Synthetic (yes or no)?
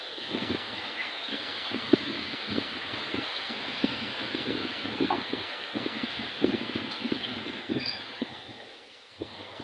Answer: yes